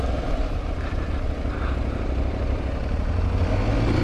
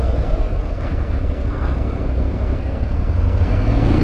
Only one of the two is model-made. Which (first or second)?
second